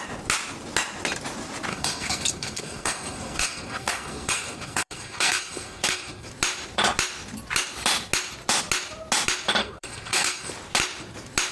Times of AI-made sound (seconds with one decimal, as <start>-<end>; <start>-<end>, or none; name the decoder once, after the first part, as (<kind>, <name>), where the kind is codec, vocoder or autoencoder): 1.7-6.3 (codec, SNAC); 9.6-10.5